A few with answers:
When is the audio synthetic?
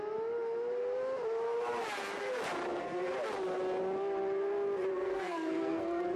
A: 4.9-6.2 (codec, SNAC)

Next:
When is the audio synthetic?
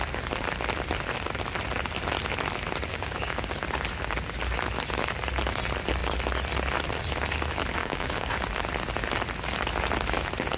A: 2.9-3.5 (codec, DAC); 7.8-8.4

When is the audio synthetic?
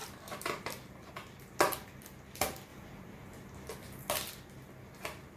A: none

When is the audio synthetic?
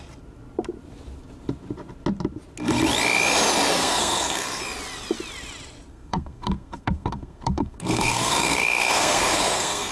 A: 3.8-4.6 (codec, SNAC); 5.9-9.9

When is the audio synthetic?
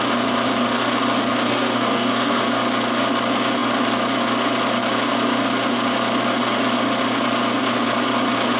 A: 1.5-2.4 (codec, SNAC)